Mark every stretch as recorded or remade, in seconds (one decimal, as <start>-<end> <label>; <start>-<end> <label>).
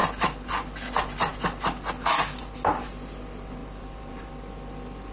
0.0-3.6 recorded; 3.6-4.3 remade; 4.3-5.1 recorded